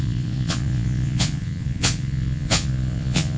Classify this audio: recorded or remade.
remade